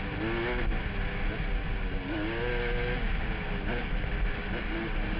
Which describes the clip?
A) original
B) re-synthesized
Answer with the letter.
A